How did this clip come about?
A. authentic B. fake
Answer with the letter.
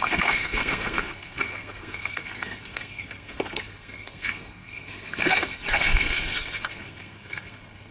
B